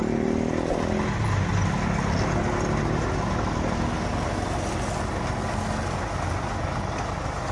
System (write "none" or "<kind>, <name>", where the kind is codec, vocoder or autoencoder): none